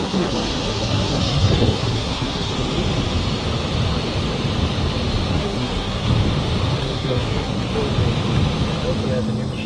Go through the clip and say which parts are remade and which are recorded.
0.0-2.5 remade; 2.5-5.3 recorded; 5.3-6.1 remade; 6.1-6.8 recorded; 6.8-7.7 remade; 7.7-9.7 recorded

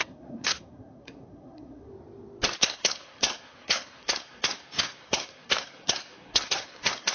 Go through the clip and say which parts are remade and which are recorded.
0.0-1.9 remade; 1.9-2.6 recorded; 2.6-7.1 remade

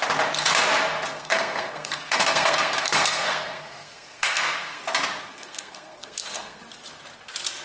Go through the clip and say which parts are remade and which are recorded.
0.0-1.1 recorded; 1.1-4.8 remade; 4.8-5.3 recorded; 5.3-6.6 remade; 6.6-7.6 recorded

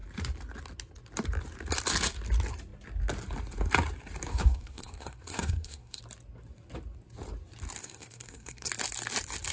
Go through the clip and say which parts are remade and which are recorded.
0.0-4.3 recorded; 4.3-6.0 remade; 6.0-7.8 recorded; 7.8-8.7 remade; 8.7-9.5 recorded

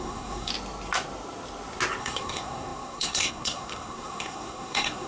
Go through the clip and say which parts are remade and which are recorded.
0.0-0.5 remade; 0.5-2.0 recorded; 2.0-5.1 remade

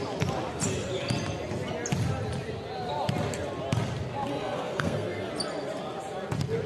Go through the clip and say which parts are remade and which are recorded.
0.0-4.3 recorded; 4.3-5.3 remade; 5.3-6.7 recorded